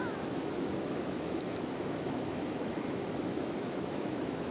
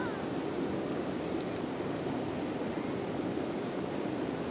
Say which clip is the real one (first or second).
second